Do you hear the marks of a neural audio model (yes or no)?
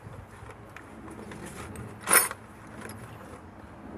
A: no